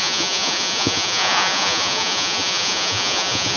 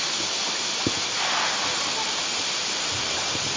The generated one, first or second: first